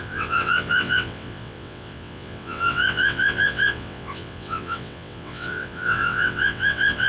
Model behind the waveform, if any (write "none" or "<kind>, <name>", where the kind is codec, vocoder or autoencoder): vocoder, WaveNeXt